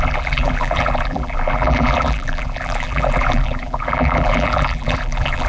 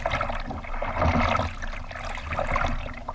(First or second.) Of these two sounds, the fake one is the first